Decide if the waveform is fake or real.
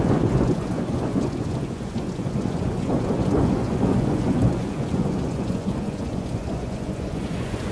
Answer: fake